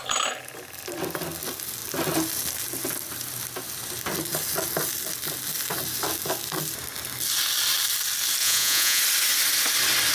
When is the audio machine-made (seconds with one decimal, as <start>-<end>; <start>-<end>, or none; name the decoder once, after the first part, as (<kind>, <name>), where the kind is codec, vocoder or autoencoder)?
8.4-9.0 (vocoder, Vocos)